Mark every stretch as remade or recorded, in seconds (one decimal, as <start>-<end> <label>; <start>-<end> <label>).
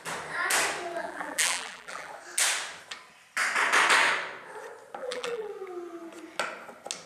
0.0-1.0 recorded; 1.0-2.1 remade; 2.1-5.0 recorded; 5.0-5.5 remade; 5.5-7.1 recorded